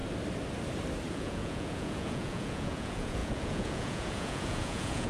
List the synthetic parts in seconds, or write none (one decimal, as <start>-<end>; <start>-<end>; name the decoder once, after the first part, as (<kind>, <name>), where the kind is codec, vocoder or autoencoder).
1.1-5.1 (vocoder, Vocos)